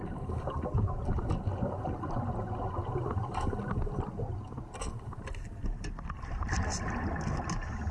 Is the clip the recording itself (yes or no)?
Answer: yes